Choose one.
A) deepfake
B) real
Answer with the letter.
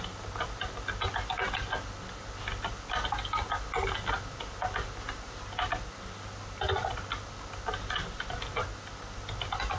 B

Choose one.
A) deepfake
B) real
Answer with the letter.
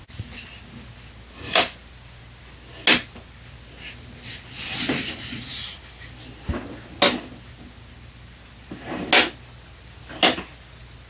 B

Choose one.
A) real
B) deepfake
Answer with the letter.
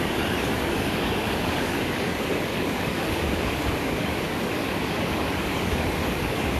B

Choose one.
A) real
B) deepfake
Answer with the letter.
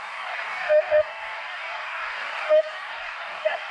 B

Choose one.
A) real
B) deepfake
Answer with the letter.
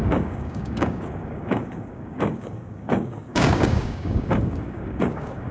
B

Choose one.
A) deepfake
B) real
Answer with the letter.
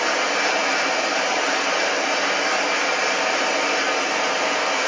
B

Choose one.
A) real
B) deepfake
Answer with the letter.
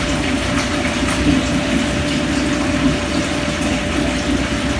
A